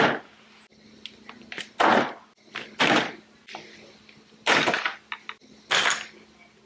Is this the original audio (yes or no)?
yes